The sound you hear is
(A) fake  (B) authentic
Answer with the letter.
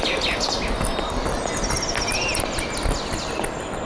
B